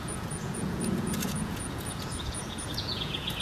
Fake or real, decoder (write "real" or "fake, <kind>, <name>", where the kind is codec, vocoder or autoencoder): fake, vocoder, Vocos